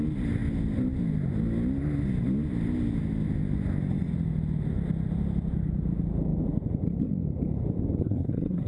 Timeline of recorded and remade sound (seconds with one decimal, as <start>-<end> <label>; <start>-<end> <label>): 0.0-8.0 recorded; 8.0-8.7 remade